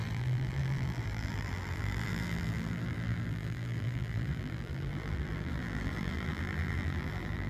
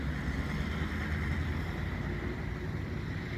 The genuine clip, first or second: second